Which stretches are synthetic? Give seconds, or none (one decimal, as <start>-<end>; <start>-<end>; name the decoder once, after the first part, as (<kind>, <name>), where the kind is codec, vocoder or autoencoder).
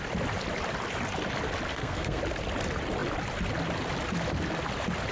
1.7-2.2 (codec, SNAC)